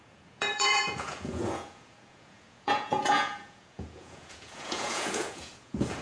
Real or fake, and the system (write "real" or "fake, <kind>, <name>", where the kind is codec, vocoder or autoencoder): fake, vocoder, Vocos